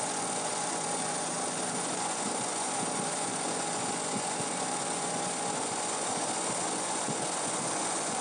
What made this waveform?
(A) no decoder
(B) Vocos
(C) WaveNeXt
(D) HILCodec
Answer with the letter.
B